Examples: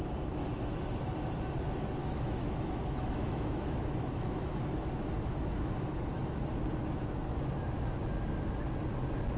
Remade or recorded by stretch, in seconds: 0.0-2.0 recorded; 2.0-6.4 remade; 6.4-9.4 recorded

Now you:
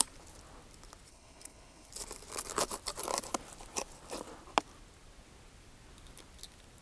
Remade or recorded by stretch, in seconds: 0.0-1.1 recorded; 1.1-1.9 remade; 1.9-6.8 recorded

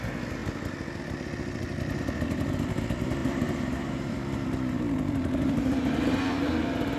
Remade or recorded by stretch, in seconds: 0.0-3.2 recorded; 3.2-5.7 remade; 5.7-7.0 recorded